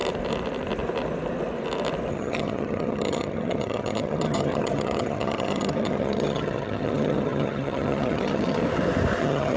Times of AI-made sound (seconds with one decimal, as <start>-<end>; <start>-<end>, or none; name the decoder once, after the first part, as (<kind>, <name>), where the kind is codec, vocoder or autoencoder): 2.1-8.6 (vocoder, HiFi-GAN); 9.2-9.6